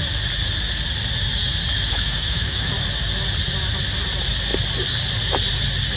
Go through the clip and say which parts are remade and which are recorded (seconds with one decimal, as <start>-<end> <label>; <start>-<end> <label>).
0.0-1.9 recorded; 1.9-2.7 remade; 2.7-6.0 recorded